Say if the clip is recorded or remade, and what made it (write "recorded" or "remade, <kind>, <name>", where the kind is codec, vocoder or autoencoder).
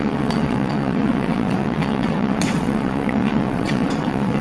remade, vocoder, WaveNeXt